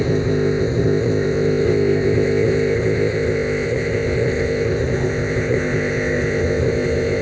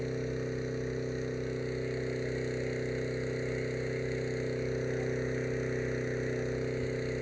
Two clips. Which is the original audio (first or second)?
second